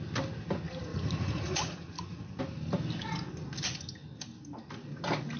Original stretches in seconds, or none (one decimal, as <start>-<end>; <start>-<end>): 0.0-0.9; 2.4-5.4